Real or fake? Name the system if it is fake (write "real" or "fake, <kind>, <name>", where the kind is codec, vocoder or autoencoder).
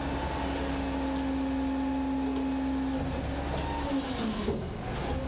real